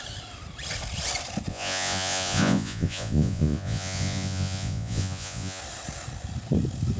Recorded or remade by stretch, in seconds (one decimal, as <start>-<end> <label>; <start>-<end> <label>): 0.0-1.5 recorded; 1.5-5.6 remade; 5.6-7.0 recorded